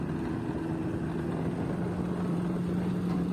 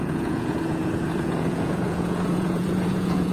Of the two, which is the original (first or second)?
first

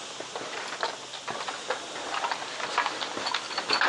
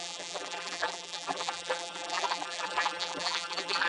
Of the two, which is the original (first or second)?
first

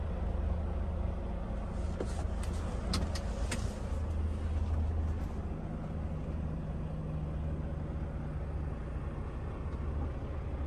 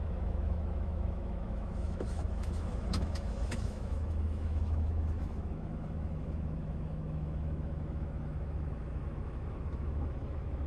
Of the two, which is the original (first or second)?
first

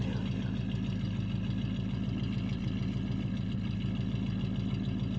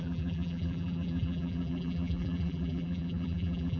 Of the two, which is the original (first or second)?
first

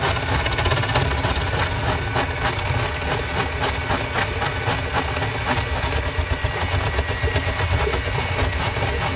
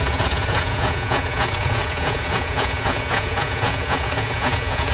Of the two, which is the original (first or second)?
first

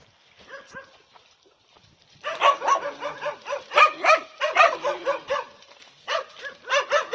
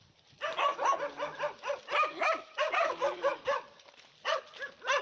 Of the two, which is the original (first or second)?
second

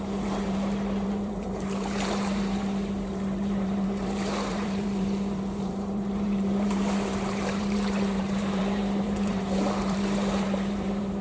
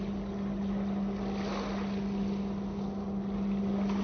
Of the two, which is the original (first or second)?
second